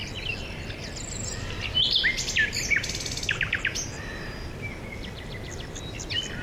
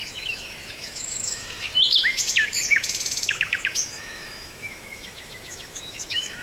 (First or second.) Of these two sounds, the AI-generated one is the second